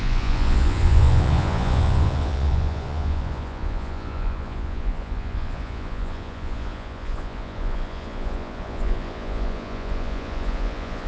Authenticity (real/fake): fake